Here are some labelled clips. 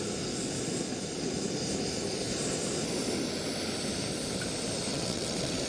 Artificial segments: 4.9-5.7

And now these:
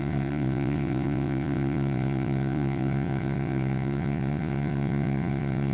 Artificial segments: 0.0-5.7